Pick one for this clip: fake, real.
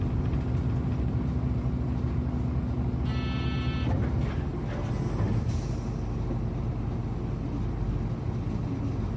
real